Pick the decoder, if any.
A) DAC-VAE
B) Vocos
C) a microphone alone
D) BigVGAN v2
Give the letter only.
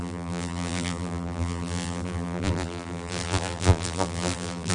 D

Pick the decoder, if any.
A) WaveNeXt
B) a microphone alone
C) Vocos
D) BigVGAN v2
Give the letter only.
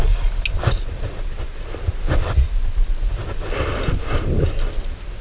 B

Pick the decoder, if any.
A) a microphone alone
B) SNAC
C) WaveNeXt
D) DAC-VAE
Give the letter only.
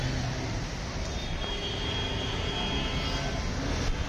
A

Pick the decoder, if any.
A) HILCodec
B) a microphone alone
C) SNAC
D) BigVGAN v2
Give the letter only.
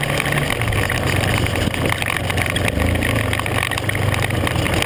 B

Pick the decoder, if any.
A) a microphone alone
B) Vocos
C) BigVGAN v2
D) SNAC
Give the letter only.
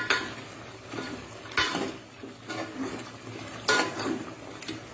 A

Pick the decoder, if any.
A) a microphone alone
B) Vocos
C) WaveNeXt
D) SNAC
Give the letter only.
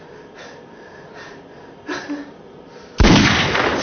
A